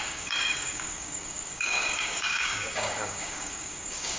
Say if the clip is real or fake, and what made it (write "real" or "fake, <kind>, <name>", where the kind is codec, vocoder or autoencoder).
fake, codec, DAC